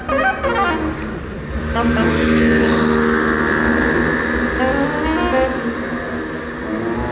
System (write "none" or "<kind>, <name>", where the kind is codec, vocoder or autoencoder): none